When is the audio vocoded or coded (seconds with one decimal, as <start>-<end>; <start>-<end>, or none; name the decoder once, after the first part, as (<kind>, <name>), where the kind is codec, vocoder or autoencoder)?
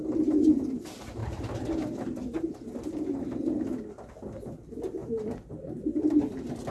none